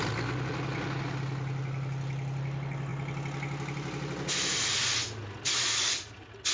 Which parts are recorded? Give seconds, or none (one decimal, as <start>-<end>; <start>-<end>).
0.0-6.5